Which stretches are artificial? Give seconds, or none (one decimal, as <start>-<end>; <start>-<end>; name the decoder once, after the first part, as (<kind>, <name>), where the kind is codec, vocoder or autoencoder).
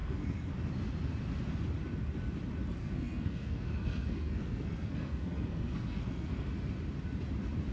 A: 0.0-0.5 (codec, SNAC); 2.8-6.5